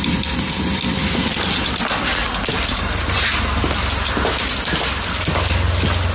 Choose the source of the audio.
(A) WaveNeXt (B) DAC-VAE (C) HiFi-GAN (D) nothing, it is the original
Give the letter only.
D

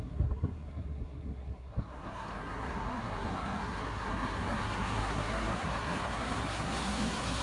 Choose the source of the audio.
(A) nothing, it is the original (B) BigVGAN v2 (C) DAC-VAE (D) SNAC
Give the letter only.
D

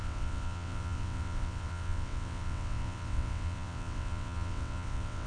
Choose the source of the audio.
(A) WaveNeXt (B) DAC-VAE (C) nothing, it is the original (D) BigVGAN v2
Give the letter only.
A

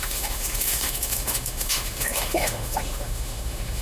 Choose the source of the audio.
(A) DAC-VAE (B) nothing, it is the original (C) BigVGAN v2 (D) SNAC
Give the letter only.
A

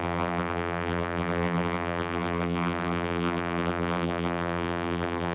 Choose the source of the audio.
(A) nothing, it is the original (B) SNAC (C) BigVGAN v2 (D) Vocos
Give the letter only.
C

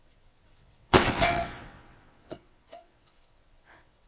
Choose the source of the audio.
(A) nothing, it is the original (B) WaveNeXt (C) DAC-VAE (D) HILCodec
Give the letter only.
B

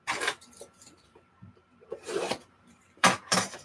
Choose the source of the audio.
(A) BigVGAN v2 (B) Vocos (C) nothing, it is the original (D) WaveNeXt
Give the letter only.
A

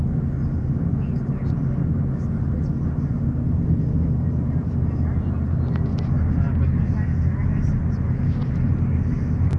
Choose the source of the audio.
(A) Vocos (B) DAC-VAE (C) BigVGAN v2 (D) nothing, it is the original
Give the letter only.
D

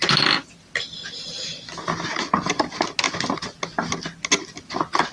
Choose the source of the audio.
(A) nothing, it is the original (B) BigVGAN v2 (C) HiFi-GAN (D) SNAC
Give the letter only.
A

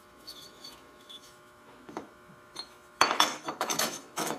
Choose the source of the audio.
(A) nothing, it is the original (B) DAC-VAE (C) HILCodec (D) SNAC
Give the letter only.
B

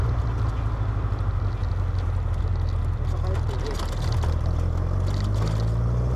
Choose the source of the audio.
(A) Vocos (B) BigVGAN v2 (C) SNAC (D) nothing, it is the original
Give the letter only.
D